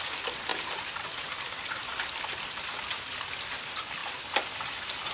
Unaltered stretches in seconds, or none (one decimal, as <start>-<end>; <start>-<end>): 0.0-5.1